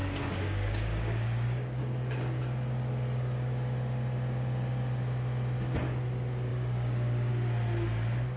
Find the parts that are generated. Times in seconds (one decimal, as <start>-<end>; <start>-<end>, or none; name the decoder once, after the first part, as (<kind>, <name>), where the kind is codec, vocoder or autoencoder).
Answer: 0.0-1.8 (codec, DAC); 6.5-7.3